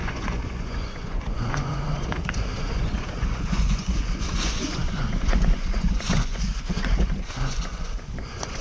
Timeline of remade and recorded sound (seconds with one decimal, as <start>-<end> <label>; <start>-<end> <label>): 0.0-8.6 remade